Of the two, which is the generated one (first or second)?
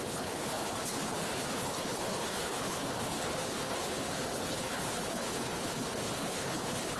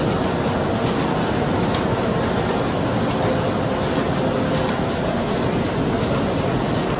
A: first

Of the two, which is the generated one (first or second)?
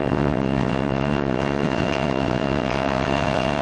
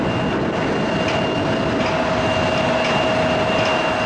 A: first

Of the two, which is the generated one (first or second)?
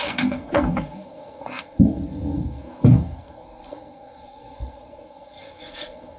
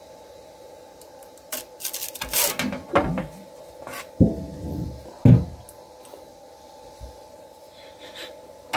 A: first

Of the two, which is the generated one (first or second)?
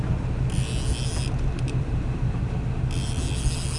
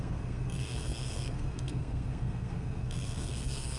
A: second